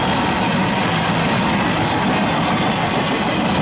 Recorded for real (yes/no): yes